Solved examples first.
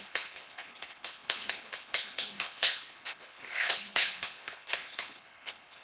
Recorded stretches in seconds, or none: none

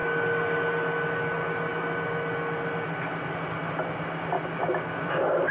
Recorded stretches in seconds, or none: 0.0-5.5

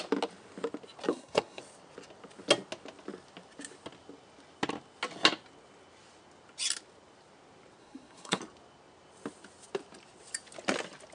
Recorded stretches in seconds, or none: 0.0-1.1; 1.6-7.8; 8.4-11.1

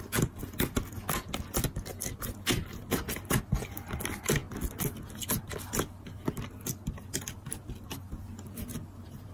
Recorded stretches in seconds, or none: 0.0-9.3